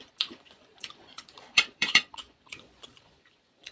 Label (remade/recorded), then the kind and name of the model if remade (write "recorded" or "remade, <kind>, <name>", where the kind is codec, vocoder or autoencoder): remade, vocoder, Vocos